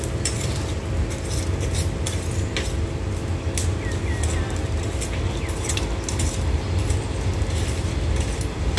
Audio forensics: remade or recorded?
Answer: recorded